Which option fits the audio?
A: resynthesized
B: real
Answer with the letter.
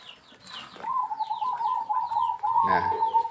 A